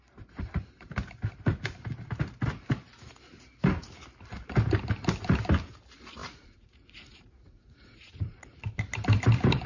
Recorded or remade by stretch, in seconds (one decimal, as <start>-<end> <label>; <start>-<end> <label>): 0.0-6.2 recorded; 6.2-8.8 remade; 8.8-9.7 recorded